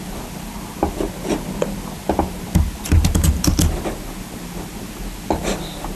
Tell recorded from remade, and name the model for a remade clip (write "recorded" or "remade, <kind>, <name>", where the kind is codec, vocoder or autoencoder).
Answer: recorded